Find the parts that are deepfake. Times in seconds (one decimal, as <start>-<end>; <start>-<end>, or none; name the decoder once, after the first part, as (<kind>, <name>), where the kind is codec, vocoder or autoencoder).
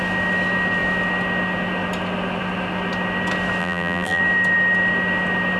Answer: 3.6-4.2 (vocoder, BigVGAN v2)